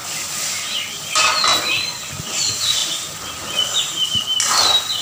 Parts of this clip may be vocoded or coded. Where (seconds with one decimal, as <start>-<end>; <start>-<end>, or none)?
none